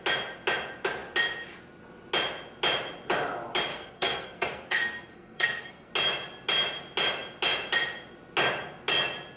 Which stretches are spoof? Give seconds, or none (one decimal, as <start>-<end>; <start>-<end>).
3.7-5.9